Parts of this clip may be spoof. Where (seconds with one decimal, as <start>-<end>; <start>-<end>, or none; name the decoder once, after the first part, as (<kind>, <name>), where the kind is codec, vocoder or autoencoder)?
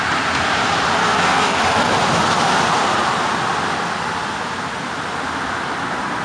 1.0-1.6 (codec, SNAC)